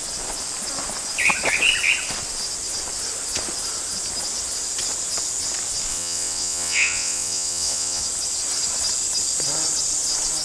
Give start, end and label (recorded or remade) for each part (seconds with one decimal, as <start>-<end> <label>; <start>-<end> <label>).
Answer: 0.0-5.9 recorded; 5.9-8.0 remade; 8.0-10.4 recorded